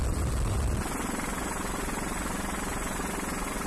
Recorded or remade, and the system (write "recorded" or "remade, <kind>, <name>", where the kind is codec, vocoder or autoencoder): recorded